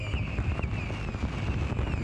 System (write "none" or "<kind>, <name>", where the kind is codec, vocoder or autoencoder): none